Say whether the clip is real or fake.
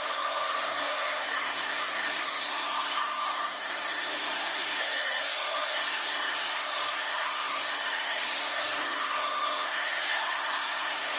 fake